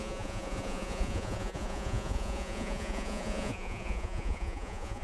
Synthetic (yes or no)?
yes